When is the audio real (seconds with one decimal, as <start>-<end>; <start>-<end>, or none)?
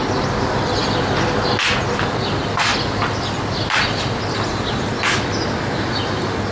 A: 0.0-6.5